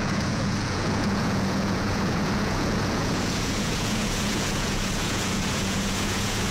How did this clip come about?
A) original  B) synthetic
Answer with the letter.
B